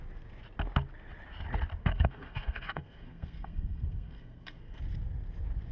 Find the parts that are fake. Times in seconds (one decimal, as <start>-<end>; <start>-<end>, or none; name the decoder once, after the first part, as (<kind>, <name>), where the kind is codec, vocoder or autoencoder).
1.8-4.8 (codec, SNAC)